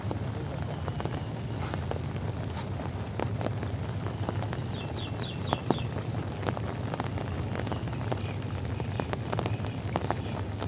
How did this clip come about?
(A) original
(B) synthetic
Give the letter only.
A